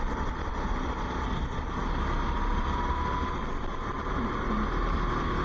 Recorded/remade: recorded